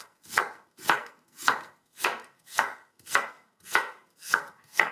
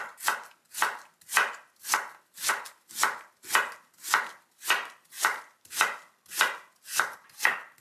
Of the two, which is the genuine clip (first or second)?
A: second